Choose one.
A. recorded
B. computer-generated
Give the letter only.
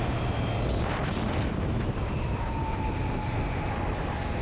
A